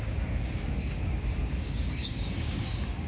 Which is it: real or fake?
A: fake